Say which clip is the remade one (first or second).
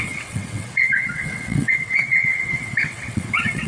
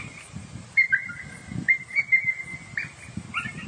first